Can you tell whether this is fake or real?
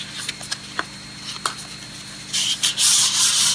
real